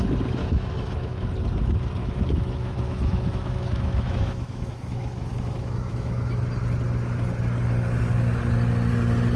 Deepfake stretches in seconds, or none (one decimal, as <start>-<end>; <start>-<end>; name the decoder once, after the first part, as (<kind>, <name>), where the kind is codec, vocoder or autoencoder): 0.4-1.3 (autoencoder, DAC-VAE); 2.0-6.3